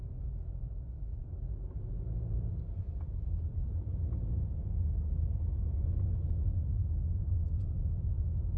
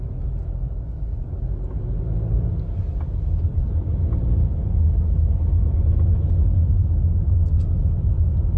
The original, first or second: second